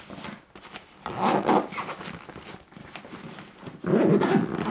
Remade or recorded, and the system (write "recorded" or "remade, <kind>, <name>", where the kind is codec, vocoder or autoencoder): recorded